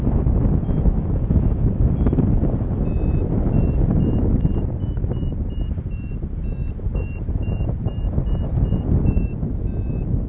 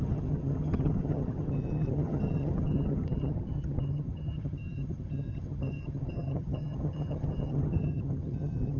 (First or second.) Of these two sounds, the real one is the first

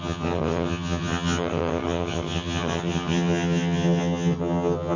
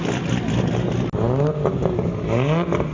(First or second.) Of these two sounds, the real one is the second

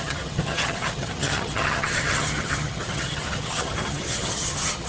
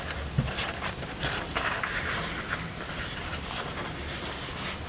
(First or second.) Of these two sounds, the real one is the second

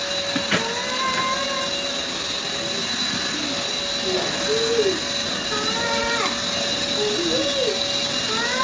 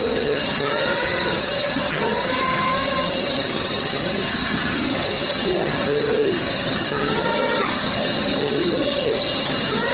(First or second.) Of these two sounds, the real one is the first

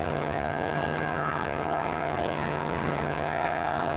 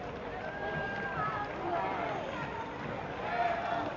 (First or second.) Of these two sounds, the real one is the second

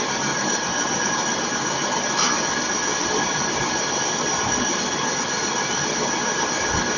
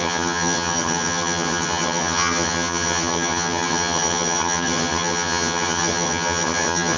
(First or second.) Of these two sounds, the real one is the first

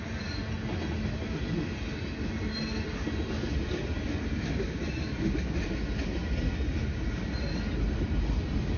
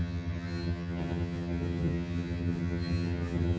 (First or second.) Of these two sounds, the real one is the first